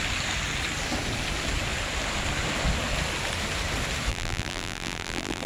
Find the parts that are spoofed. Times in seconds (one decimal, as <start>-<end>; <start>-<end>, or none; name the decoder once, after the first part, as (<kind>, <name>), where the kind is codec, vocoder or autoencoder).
4.1-5.5 (vocoder, BigVGAN v2)